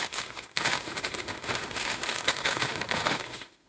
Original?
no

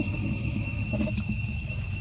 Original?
no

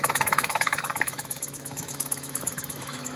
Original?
no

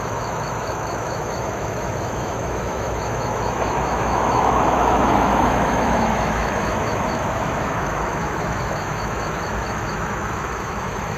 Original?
no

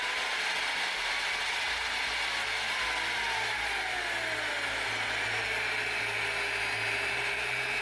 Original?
yes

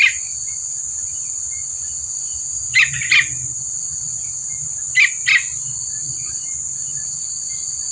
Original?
yes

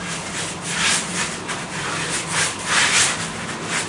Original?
yes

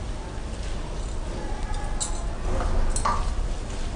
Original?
yes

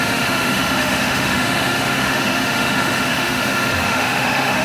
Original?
no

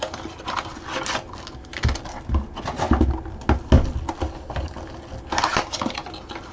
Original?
yes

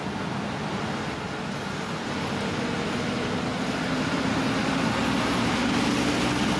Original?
yes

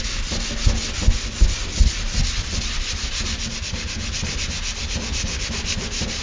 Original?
yes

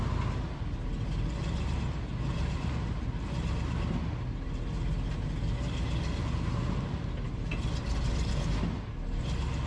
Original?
yes